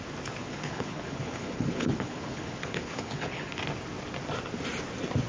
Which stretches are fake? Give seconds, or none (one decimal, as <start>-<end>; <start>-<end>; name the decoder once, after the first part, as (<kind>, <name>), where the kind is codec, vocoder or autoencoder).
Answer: 0.4-3.6 (codec, HILCodec)